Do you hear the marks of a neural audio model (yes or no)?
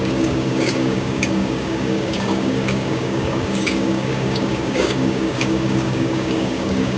yes